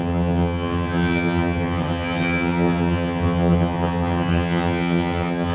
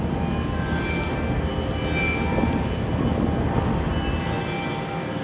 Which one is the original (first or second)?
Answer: second